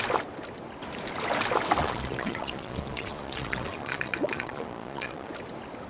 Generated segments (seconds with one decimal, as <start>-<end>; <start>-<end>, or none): 1.8-5.3